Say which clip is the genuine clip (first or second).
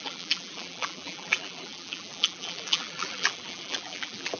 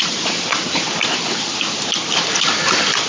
second